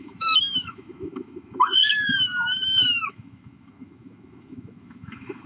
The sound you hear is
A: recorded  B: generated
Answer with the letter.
B